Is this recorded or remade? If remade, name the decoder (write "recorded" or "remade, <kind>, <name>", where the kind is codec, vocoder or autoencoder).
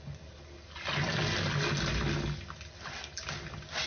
recorded